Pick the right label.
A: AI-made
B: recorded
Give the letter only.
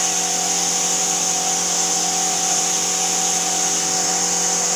B